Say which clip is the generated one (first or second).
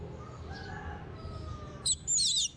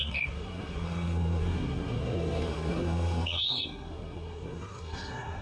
second